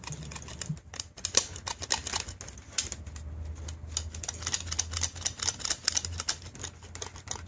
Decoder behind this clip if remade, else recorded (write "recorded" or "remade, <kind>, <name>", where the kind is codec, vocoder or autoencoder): recorded